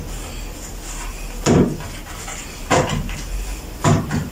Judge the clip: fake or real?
real